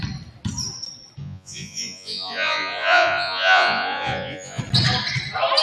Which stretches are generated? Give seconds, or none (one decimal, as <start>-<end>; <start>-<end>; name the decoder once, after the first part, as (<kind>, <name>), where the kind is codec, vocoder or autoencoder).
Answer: 1.2-4.6 (vocoder, Vocos)